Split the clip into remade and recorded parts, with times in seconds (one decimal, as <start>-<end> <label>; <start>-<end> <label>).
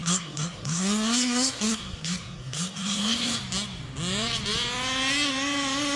0.0-3.4 remade; 3.4-6.0 recorded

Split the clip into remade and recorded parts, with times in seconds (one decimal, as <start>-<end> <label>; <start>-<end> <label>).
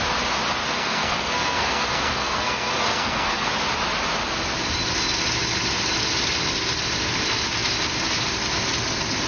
0.0-0.6 recorded; 0.6-3.5 remade; 3.5-9.3 recorded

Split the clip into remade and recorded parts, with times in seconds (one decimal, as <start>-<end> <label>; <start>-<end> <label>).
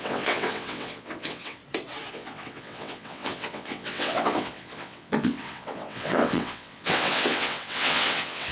0.0-1.6 remade; 1.6-2.1 recorded; 2.1-8.5 remade